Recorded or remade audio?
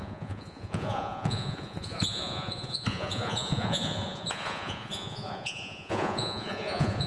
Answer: remade